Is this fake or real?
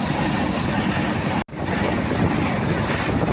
real